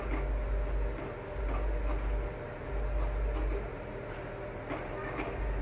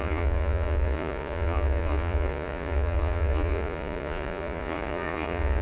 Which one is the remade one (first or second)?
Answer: second